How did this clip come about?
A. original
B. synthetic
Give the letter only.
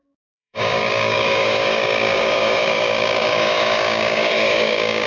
B